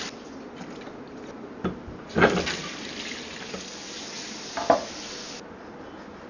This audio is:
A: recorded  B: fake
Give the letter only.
A